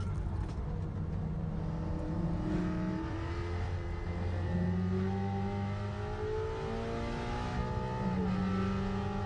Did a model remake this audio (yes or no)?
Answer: no